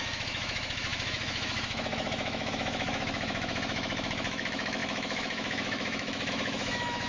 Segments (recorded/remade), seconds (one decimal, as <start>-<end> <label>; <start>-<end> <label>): 0.0-7.1 remade